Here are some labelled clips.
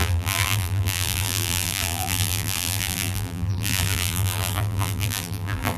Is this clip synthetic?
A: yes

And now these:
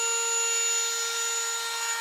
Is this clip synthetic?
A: no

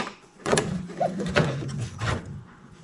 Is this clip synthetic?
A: yes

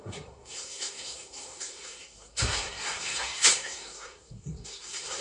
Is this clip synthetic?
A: yes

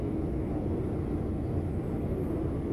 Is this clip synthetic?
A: no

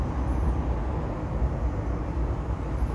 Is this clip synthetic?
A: no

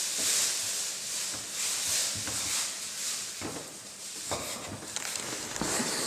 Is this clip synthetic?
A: no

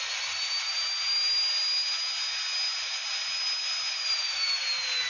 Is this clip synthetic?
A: no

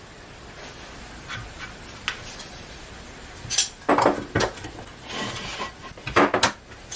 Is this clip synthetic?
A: no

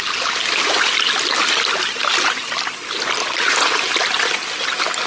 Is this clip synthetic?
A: no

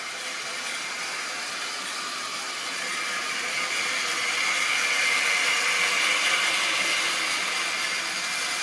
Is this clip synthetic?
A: no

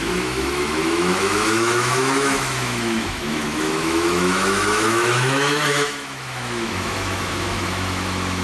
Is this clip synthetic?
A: yes